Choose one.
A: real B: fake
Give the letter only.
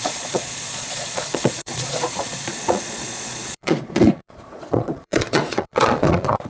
B